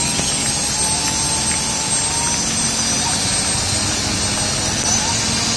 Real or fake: real